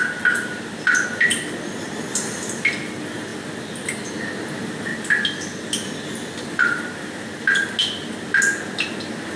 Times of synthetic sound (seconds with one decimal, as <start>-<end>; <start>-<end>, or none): none